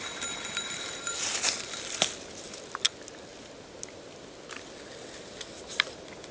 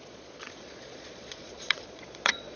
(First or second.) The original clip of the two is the first